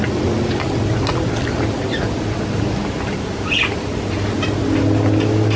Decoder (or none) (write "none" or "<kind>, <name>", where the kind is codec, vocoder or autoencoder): none